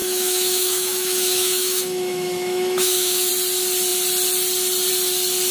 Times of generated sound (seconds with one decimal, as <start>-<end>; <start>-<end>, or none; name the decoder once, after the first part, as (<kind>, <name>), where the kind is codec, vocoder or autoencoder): 0.0-3.3 (autoencoder, DAC-VAE)